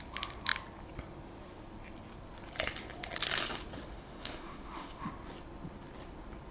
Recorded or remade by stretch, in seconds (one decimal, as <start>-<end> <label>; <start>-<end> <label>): 0.0-3.9 recorded; 3.9-5.1 remade; 5.1-6.5 recorded